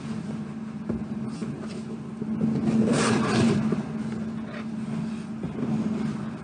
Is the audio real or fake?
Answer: real